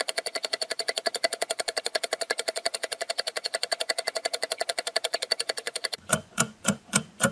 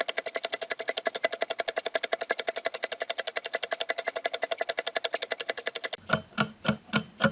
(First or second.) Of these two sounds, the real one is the second